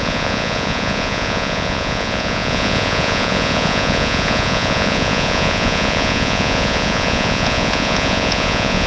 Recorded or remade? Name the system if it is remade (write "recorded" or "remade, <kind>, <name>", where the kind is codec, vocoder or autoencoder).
remade, vocoder, Vocos